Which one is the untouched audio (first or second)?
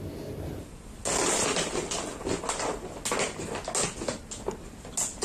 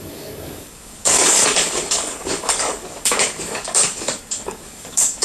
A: first